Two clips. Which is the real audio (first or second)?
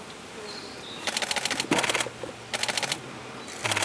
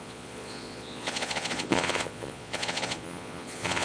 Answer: first